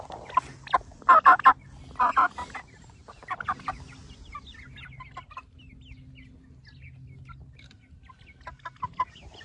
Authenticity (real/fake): real